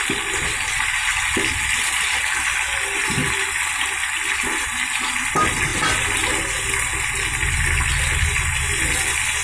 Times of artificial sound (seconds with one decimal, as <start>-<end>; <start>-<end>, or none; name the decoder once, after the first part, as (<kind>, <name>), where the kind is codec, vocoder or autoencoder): none